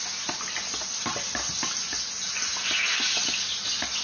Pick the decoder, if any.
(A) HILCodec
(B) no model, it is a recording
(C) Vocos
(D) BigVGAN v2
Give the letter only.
B